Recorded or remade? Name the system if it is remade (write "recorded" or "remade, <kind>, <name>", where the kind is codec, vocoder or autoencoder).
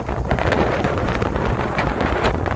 remade, vocoder, Vocos